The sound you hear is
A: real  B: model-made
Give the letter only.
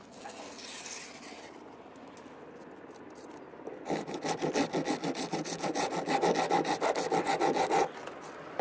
A